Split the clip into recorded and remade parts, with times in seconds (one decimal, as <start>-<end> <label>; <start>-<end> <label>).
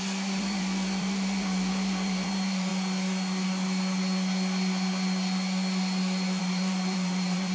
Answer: 0.0-2.7 remade; 2.7-6.4 recorded; 6.4-7.5 remade